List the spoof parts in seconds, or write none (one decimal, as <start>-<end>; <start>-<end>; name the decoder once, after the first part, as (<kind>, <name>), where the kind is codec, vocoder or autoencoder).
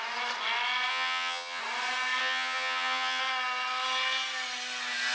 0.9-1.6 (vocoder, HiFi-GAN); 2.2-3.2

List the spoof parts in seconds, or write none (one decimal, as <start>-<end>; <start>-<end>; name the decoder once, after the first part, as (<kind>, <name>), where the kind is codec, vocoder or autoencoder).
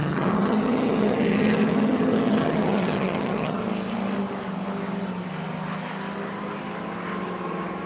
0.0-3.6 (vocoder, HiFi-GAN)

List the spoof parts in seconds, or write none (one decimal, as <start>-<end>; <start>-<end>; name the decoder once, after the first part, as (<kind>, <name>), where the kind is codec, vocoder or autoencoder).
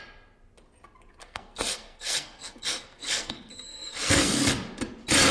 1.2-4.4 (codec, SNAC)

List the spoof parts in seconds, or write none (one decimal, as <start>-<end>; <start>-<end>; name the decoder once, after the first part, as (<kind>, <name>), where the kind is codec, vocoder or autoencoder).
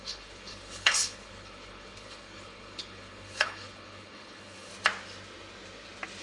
0.0-4.7 (codec, HILCodec)